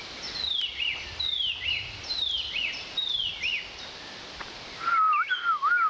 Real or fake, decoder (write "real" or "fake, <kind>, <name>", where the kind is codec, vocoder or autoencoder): real